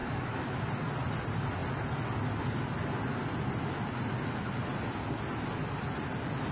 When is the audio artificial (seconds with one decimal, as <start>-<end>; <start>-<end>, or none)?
0.0-0.6